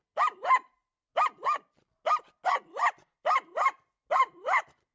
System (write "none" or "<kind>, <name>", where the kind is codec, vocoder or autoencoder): none